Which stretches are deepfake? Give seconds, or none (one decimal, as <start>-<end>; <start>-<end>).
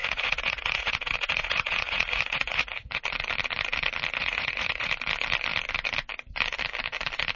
0.0-3.0; 4.2-4.9